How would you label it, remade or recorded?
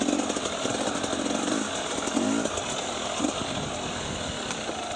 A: recorded